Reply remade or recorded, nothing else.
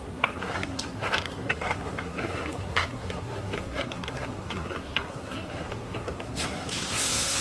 remade